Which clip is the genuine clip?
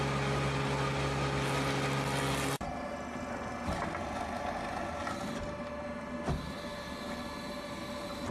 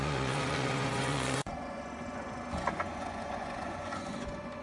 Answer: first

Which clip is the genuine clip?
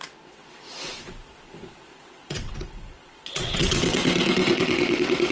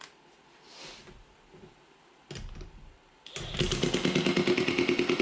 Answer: second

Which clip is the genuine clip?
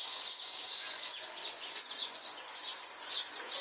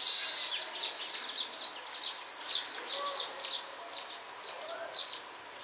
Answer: second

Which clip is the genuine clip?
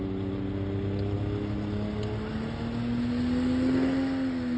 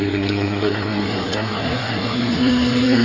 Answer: first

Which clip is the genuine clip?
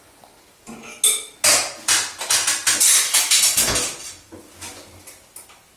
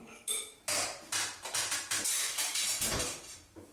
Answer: first